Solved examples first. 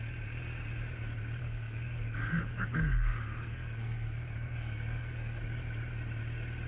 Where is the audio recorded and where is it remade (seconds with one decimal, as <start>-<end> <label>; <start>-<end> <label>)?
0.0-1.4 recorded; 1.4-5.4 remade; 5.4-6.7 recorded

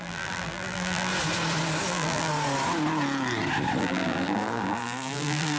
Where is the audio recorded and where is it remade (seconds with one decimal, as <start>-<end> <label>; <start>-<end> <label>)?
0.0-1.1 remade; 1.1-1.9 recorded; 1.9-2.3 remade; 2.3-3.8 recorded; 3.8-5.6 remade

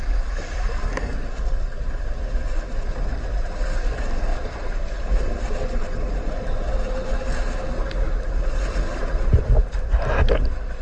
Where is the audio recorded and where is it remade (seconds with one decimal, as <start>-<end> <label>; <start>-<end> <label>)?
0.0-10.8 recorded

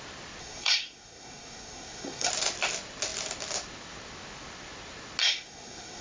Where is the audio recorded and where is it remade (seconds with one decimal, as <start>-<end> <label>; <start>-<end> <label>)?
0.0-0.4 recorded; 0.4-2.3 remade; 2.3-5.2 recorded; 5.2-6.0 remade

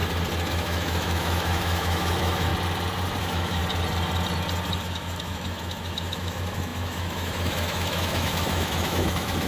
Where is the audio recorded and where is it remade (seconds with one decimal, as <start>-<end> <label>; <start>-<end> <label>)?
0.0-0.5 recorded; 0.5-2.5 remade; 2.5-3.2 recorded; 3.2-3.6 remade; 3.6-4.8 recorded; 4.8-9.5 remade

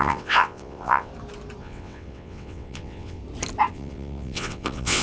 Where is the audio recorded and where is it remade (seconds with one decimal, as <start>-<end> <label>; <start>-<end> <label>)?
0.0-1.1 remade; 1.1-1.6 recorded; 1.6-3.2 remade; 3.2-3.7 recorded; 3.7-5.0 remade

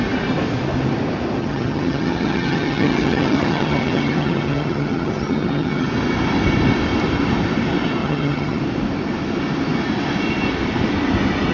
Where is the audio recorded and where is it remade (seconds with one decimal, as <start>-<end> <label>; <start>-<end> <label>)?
0.0-1.4 recorded; 1.4-5.9 remade; 5.9-8.0 recorded; 8.0-8.6 remade; 8.6-11.5 recorded